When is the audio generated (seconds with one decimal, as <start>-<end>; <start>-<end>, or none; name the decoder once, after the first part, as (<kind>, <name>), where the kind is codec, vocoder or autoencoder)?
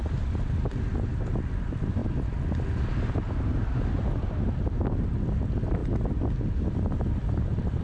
none